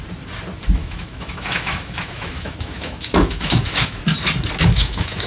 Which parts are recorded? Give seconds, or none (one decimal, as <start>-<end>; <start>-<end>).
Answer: 0.0-0.8; 4.0-4.6